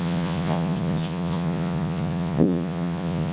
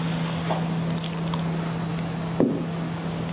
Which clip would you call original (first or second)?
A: second